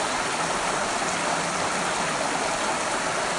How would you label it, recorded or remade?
recorded